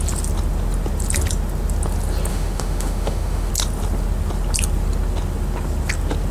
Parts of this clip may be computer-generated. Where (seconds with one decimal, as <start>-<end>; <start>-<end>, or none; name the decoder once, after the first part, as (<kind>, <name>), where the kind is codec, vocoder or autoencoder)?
2.3-3.5 (autoencoder, DAC-VAE)